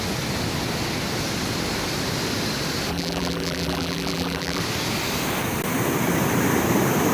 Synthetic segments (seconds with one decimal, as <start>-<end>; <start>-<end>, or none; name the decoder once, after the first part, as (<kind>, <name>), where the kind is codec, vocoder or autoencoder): 2.9-4.6 (vocoder, BigVGAN v2)